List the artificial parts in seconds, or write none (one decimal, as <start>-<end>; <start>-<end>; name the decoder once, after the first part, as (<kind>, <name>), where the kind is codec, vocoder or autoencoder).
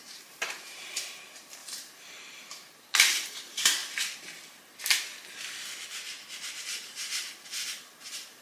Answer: 0.0-1.6 (vocoder, BigVGAN v2); 2.2-3.8; 6.6-7.1; 7.8-8.4